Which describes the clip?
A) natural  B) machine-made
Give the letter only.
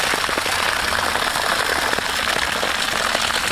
A